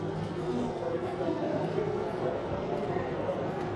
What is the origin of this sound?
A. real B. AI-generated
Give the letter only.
B